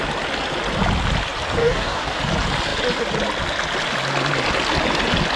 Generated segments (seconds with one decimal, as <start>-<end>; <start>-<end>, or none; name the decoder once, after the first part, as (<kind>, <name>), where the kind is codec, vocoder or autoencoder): 1.6-2.2 (codec, DAC)